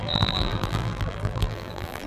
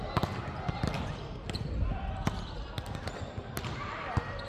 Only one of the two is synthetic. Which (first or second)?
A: first